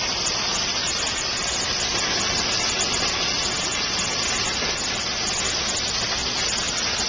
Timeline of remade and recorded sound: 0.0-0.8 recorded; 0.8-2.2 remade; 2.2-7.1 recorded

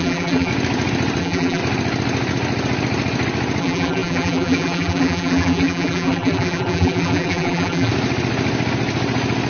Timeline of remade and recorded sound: 0.0-0.5 remade; 0.5-1.2 recorded; 1.2-1.6 remade; 1.6-3.6 recorded; 3.6-7.9 remade; 7.9-9.5 recorded